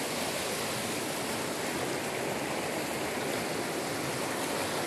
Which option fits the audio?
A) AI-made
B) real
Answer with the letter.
B